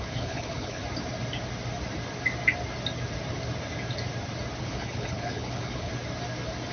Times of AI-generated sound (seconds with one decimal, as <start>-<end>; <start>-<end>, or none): 0.0-0.8; 4.6-5.9